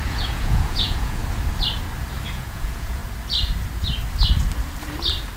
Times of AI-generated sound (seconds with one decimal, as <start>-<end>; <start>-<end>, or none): 0.0-1.2; 2.3-3.0